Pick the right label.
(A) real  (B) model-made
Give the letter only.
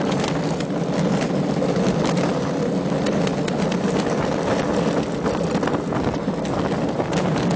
A